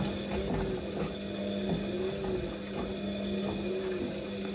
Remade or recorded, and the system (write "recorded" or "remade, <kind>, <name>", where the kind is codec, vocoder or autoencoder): recorded